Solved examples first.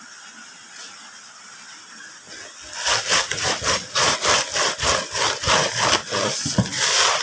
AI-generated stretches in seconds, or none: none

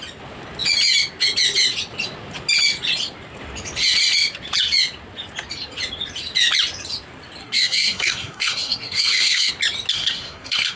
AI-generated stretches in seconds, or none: 7.4-9.5 (codec, SNAC); 9.9-10.8

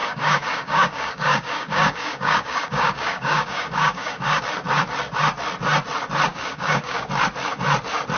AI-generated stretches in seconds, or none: 0.0-4.4 (codec, DAC); 6.3-7.1

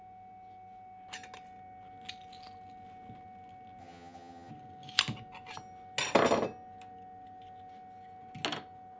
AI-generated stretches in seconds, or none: 3.8-4.5 (vocoder, HiFi-GAN)

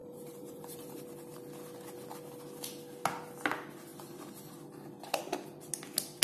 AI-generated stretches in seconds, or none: 0.0-1.1 (vocoder, BigVGAN v2)

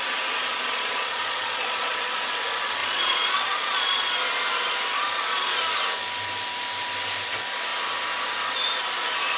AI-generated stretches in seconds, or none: 0.4-2.2 (vocoder, Vocos); 2.8-4.0